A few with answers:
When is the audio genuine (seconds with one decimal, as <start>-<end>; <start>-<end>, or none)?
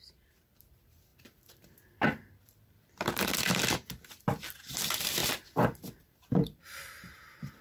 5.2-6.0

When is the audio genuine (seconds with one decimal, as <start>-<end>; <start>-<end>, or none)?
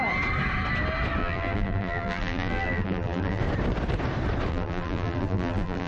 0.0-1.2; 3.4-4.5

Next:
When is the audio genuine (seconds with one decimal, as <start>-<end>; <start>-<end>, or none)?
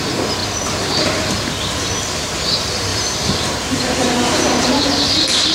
0.0-2.9; 4.7-5.5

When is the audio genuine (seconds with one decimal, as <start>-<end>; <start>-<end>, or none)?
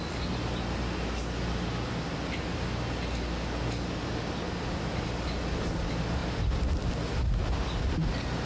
0.0-8.5